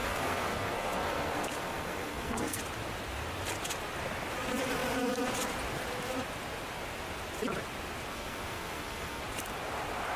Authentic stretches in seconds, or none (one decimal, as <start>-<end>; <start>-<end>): 2.6-8.1; 9.2-10.2